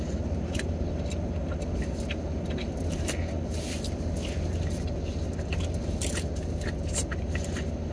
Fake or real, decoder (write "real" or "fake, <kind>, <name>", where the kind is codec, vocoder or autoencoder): real